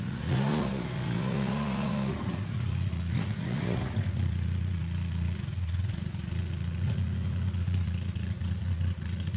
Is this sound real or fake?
fake